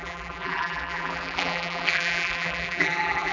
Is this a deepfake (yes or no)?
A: yes